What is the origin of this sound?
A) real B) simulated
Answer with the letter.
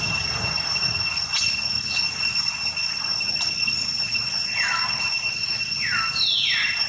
A